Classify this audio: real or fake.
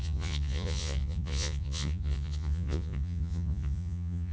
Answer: fake